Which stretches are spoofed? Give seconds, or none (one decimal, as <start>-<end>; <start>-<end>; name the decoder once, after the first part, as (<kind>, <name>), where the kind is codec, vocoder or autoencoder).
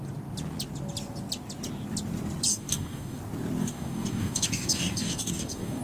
2.5-3.2 (codec, DAC); 3.6-5.8